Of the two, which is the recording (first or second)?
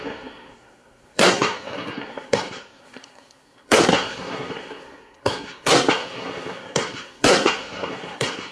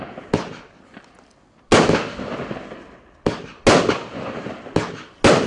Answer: second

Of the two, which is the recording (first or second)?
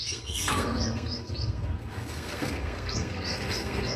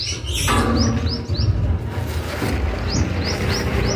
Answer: second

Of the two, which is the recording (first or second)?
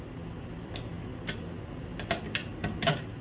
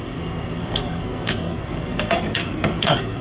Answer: first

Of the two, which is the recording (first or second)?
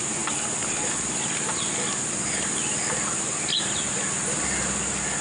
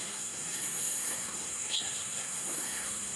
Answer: first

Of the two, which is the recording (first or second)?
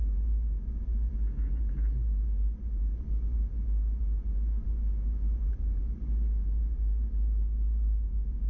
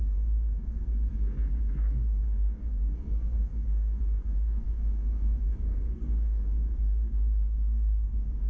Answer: first